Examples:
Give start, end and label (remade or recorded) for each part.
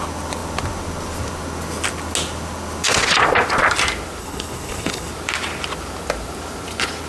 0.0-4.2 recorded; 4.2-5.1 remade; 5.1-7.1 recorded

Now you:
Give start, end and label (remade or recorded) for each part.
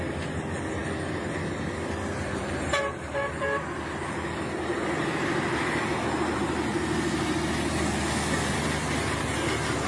0.0-9.9 recorded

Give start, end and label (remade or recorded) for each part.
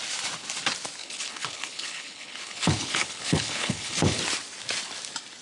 0.0-1.0 recorded; 1.0-4.2 remade; 4.2-5.4 recorded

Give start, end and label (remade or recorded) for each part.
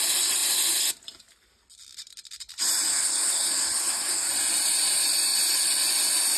0.0-2.9 recorded; 2.9-4.3 remade; 4.3-6.4 recorded